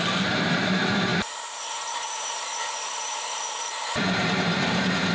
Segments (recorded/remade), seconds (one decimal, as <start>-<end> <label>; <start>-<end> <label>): 0.0-5.1 remade